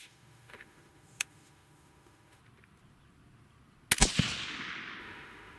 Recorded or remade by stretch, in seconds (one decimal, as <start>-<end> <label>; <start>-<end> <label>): 0.0-2.4 remade; 2.4-5.0 recorded; 5.0-5.6 remade

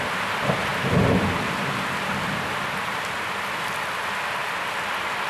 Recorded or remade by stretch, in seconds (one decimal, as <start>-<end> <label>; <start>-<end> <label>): 0.0-4.4 recorded; 4.4-5.3 remade

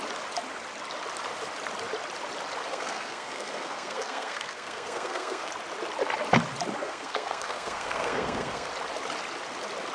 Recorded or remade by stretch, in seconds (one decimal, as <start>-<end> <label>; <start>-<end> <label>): 0.0-2.7 recorded; 2.7-5.5 remade; 5.5-6.8 recorded; 6.8-8.7 remade; 8.7-9.9 recorded

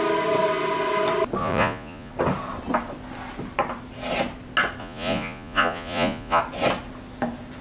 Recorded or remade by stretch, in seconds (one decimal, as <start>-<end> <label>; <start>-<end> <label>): 0.0-1.4 recorded; 1.4-2.1 remade; 2.1-4.8 recorded; 4.8-6.4 remade; 6.4-7.6 recorded

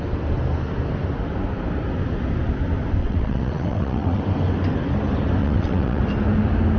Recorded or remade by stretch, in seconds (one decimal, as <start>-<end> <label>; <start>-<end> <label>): 0.0-3.0 recorded; 3.0-4.2 remade; 4.2-5.4 recorded; 5.4-6.0 remade; 6.0-6.8 recorded

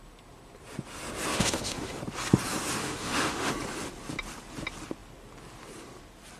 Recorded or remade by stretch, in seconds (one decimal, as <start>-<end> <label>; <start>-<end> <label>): 0.0-1.3 recorded; 1.3-2.0 remade; 2.0-2.8 recorded; 2.8-3.5 remade; 3.5-6.4 recorded

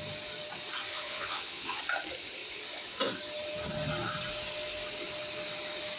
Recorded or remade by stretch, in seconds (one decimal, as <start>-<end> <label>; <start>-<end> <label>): 0.0-0.9 recorded; 0.9-1.8 remade; 1.8-6.0 recorded